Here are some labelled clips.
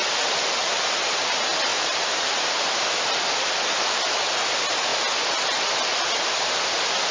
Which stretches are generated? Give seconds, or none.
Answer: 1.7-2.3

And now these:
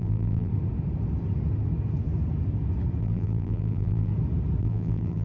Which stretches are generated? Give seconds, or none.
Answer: 0.0-0.5; 3.0-4.1; 4.6-5.2

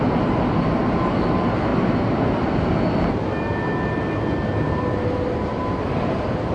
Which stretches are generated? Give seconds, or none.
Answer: none